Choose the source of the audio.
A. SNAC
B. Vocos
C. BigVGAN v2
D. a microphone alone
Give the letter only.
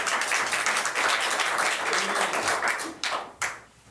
D